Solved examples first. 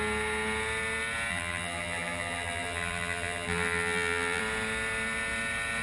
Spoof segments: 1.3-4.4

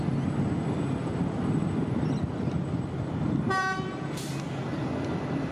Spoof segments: 1.0-4.3; 4.7-5.5

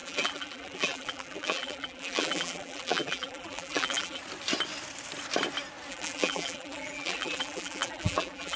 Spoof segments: 0.0-4.2; 5.9-8.6

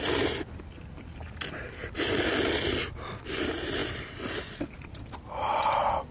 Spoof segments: none